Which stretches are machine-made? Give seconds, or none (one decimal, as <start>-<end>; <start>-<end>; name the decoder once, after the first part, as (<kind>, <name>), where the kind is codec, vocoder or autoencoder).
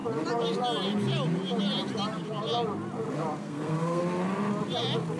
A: 3.4-4.0 (codec, SNAC)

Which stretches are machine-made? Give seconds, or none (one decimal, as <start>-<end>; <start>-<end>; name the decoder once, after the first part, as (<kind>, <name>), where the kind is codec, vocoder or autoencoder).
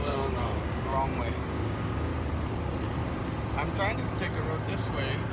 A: 0.0-0.9 (codec, DAC); 1.5-2.1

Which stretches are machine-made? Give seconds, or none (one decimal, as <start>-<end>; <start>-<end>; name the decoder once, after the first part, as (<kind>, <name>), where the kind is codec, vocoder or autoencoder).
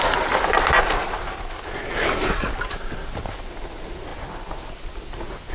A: none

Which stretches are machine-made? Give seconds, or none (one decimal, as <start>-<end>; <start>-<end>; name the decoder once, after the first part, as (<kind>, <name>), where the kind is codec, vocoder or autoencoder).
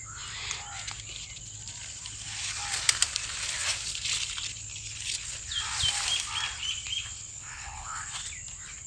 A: 7.3-8.0 (codec, HILCodec)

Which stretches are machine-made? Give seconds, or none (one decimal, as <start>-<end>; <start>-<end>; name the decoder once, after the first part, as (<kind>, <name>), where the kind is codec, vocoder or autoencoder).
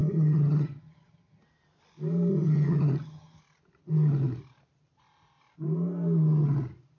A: 0.0-1.4 (vocoder, HiFi-GAN); 2.3-3.4